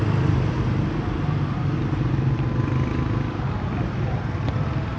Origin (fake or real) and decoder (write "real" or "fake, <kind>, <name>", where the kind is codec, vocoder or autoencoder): real